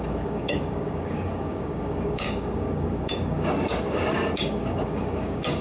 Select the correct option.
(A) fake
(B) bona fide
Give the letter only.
A